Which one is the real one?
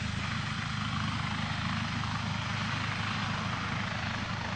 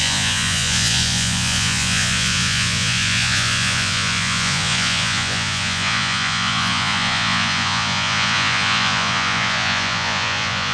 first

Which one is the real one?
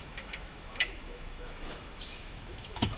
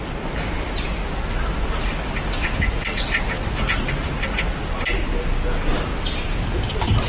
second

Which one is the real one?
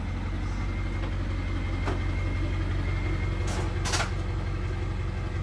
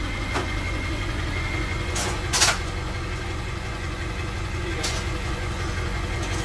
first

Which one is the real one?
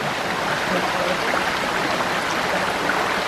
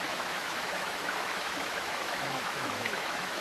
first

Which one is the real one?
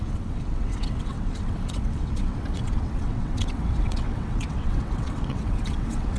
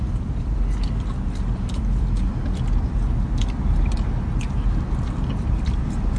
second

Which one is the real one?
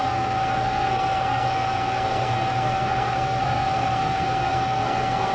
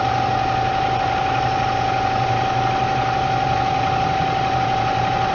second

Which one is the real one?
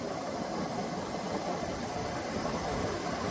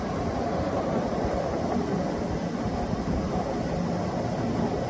second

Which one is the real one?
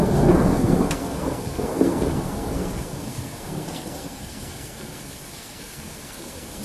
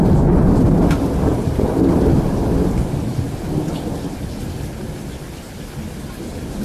second